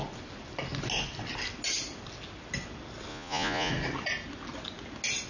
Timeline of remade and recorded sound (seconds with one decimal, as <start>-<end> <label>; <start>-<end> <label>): 0.0-3.1 recorded; 3.1-3.7 remade; 3.7-5.3 recorded